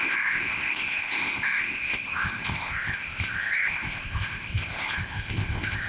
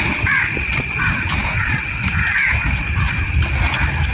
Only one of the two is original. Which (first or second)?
second